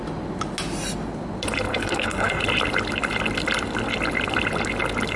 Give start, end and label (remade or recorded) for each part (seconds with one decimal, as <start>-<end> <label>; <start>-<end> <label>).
0.0-1.7 recorded; 1.7-2.4 remade; 2.4-5.2 recorded